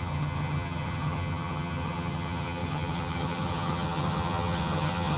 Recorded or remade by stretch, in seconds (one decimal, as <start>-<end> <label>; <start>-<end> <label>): 0.0-5.2 remade